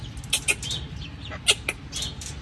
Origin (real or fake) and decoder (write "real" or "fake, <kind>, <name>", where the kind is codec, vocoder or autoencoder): real